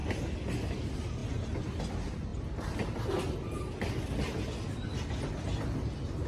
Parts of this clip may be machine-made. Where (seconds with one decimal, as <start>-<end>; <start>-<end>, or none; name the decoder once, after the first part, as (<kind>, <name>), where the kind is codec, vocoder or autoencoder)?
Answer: none